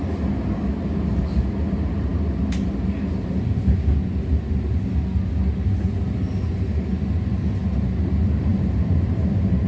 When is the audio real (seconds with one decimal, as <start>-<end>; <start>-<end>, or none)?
0.0-8.5